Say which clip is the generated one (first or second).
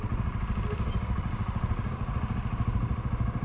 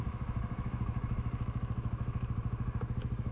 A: second